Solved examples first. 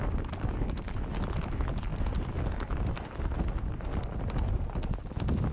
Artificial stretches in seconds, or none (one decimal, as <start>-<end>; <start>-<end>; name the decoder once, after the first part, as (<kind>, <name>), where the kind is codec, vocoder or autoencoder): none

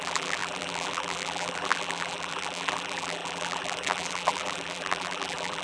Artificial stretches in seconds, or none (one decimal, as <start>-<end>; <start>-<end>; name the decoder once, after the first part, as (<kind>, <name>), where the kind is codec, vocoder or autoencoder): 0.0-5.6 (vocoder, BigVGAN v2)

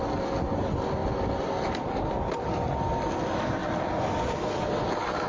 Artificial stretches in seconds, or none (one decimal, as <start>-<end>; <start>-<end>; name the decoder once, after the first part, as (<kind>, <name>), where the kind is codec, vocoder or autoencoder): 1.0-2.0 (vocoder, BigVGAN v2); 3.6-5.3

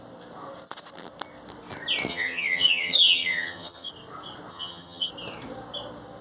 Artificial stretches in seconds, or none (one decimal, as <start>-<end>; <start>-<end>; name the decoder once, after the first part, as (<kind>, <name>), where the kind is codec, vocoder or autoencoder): 2.1-3.9 (vocoder, HiFi-GAN); 4.5-5.1

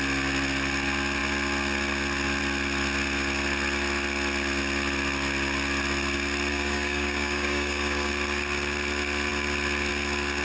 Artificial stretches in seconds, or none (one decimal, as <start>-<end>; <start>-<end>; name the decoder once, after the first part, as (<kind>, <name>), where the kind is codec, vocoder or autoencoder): 6.5-8.1 (codec, DAC)